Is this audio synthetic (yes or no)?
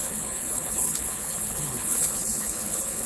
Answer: yes